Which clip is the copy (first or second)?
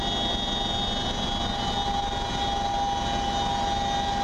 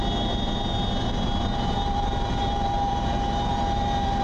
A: second